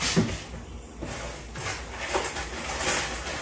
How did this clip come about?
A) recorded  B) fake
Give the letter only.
A